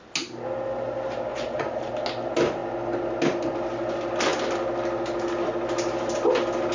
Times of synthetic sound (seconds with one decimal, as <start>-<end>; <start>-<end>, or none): 1.3-1.9